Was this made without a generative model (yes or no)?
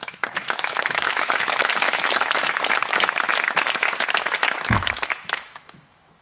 no